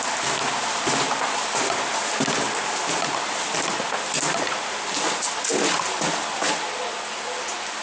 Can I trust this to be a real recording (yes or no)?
yes